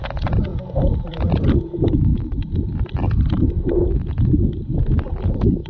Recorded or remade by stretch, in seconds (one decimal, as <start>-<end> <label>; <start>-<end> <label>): 0.0-2.1 remade; 2.1-5.7 recorded